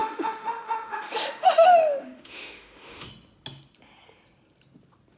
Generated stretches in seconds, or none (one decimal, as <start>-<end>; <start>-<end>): 0.0-3.1